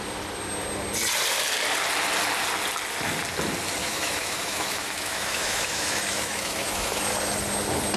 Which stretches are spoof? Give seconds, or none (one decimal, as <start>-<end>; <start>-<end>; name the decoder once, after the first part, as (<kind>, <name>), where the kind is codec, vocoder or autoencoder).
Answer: 3.8-7.0 (autoencoder, DAC-VAE)